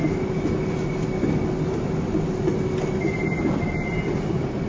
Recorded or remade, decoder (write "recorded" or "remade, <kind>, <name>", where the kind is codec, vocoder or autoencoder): recorded